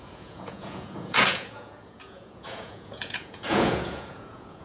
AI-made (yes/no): yes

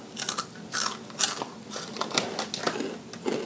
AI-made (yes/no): no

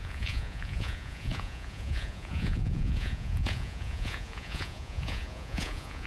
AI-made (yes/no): yes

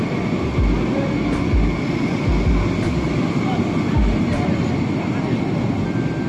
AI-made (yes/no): no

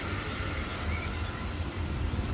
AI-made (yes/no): no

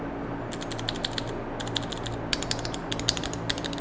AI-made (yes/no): no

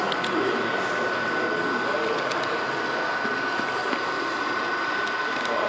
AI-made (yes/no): no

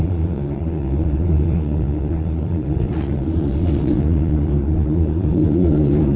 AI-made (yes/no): yes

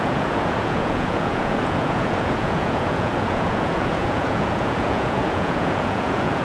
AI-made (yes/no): yes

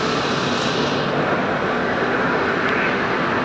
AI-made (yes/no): no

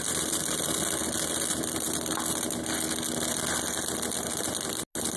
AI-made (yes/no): no